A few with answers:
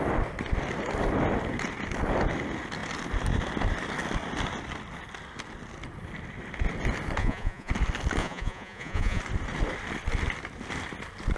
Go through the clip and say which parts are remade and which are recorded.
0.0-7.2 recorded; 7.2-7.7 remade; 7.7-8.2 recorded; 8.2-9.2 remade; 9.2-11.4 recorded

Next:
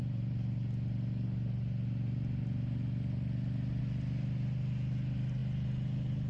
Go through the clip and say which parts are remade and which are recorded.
0.0-6.3 recorded